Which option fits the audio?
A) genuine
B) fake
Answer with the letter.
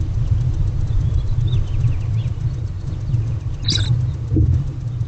B